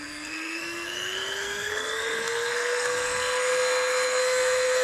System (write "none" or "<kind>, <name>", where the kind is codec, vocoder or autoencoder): codec, SNAC